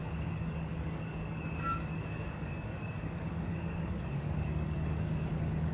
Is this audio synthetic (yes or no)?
yes